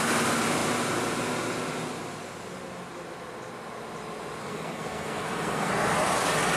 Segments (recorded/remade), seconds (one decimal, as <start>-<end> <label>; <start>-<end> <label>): 0.0-4.4 recorded; 4.4-5.7 remade; 5.7-6.6 recorded